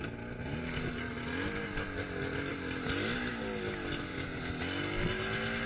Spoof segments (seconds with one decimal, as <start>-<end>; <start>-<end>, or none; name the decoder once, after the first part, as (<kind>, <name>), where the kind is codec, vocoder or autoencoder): none